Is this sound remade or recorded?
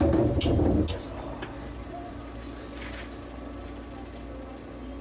recorded